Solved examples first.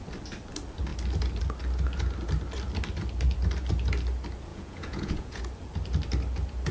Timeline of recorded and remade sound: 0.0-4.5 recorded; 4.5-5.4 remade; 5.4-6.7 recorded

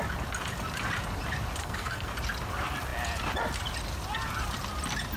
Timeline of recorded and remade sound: 0.0-1.6 recorded; 1.6-2.1 remade; 2.1-5.2 recorded

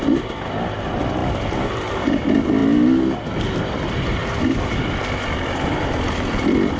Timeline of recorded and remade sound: 0.0-6.8 recorded

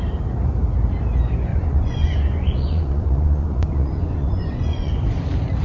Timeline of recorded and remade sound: 0.0-1.5 recorded; 1.5-4.9 remade; 4.9-5.6 recorded

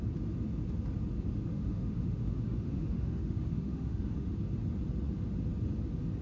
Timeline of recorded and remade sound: 0.0-1.5 recorded; 1.5-4.3 remade; 4.3-6.2 recorded

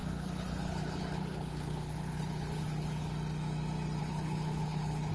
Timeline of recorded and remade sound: 0.0-3.1 remade; 3.1-4.0 recorded; 4.0-5.1 remade

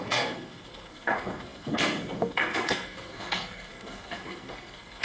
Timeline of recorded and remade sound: 0.0-5.0 remade